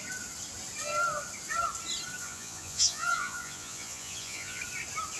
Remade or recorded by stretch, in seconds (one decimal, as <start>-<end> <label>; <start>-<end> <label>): 0.0-2.2 recorded; 2.2-4.6 remade; 4.6-5.2 recorded

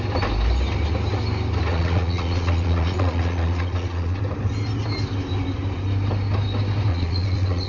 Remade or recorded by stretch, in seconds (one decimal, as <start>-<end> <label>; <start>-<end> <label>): 0.0-1.7 recorded; 1.7-4.2 remade; 4.2-6.9 recorded; 6.9-7.7 remade

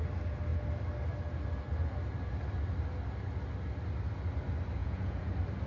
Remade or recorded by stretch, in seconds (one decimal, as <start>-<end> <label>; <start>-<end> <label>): 0.0-4.8 recorded; 4.8-5.3 remade; 5.3-5.7 recorded

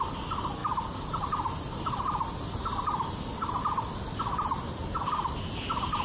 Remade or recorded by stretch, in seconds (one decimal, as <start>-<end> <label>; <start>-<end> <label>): 0.0-6.0 recorded

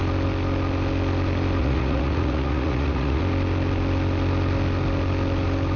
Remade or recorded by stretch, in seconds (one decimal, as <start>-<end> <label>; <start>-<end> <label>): 0.0-1.6 recorded; 1.6-3.2 remade; 3.2-5.8 recorded

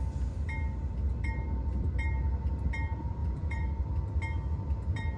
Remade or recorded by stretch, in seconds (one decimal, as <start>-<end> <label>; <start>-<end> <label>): 0.0-3.2 recorded; 3.2-3.7 remade; 3.7-5.2 recorded

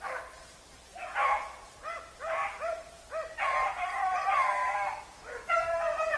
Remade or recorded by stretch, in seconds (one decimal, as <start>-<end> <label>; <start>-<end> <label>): 0.0-6.2 recorded

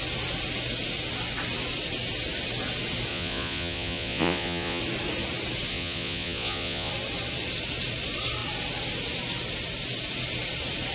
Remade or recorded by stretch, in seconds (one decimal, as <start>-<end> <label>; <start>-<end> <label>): 0.0-3.1 recorded; 3.1-4.8 remade; 4.8-5.7 recorded; 5.7-6.9 remade; 6.9-10.9 recorded